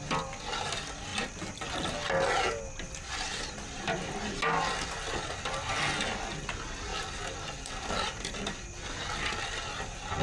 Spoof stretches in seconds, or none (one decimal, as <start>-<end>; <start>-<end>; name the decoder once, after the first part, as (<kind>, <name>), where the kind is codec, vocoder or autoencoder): 1.1-1.9 (vocoder, BigVGAN v2); 3.3-4.2; 6.9-8.8